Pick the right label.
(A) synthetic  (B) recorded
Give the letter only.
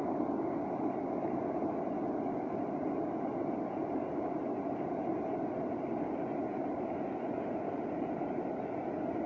B